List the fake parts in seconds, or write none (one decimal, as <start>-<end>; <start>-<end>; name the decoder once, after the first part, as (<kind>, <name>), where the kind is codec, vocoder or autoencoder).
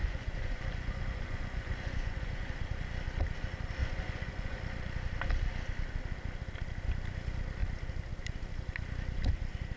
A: 0.0-2.6 (vocoder, Vocos); 3.8-4.6